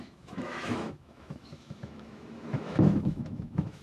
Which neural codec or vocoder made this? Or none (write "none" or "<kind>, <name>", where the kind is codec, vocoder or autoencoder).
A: autoencoder, DAC-VAE